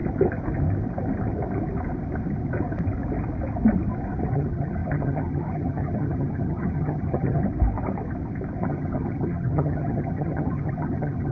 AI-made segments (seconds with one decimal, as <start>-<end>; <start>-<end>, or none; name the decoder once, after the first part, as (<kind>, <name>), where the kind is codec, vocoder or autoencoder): 4.3-7.4 (vocoder, HiFi-GAN); 8.6-11.3